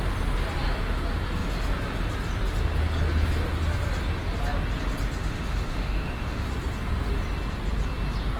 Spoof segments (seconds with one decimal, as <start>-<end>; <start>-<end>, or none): 5.2-6.5